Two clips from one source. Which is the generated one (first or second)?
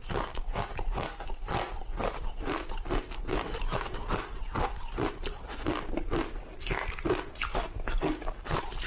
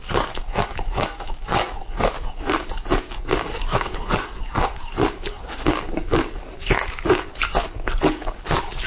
second